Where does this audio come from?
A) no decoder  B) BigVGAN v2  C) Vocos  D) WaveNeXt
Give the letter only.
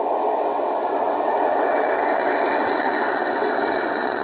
D